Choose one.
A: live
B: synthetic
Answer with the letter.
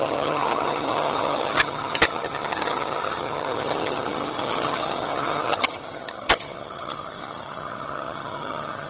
B